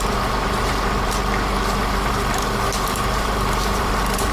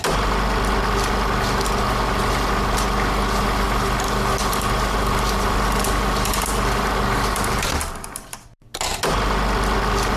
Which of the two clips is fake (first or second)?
first